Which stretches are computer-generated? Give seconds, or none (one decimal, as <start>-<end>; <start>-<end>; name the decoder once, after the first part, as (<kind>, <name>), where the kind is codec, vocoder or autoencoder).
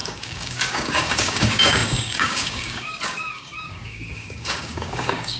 0.0-5.4 (codec, DAC)